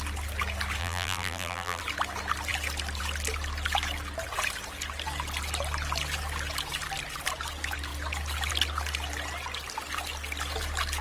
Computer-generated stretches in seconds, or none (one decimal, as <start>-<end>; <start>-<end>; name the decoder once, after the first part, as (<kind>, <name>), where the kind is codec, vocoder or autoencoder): 0.8-1.8 (vocoder, BigVGAN v2)